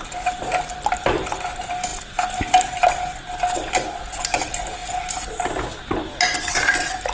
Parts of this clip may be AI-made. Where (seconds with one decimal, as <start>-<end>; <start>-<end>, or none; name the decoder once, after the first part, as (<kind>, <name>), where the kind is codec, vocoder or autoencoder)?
none

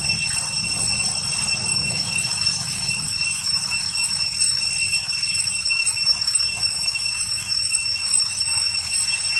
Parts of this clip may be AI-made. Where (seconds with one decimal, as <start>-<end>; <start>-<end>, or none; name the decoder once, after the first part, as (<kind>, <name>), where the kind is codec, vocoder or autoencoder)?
1.7-4.6 (autoencoder, DAC-VAE); 5.0-8.9

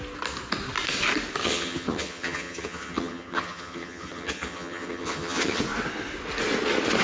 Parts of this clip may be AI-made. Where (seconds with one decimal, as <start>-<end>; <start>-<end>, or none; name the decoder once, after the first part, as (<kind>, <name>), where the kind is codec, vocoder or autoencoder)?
1.4-5.6 (vocoder, HiFi-GAN)

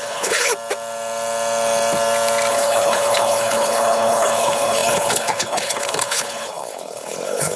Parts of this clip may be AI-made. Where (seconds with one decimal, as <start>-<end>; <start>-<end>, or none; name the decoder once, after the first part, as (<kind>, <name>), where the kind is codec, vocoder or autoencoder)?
0.0-0.5 (codec, HILCodec); 2.5-7.6